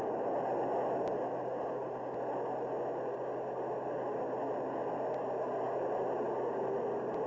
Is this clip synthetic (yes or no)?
no